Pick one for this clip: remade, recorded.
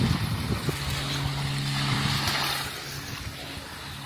recorded